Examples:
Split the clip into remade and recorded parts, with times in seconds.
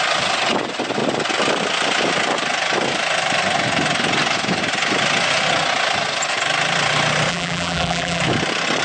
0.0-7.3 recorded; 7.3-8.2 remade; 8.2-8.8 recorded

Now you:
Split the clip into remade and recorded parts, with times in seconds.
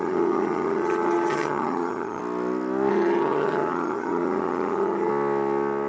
0.0-2.2 remade; 2.2-2.9 recorded; 2.9-5.1 remade; 5.1-5.9 recorded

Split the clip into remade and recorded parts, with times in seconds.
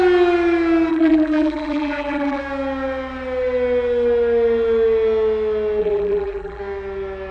0.0-0.9 recorded; 0.9-2.4 remade; 2.4-5.8 recorded; 5.8-6.6 remade; 6.6-7.3 recorded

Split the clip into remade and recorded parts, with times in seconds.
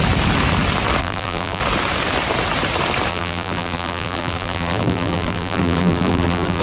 0.0-1.0 recorded; 1.0-1.6 remade; 1.6-3.1 recorded; 3.1-6.6 remade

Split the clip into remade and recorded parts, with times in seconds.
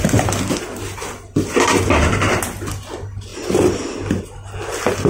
0.0-5.1 recorded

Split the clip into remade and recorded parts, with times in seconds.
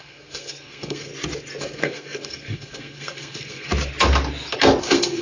0.0-1.1 remade; 1.1-1.6 recorded; 1.6-3.7 remade; 3.7-4.8 recorded; 4.8-5.2 remade